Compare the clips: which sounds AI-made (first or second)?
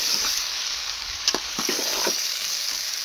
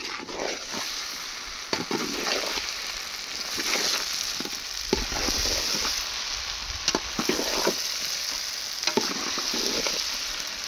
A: first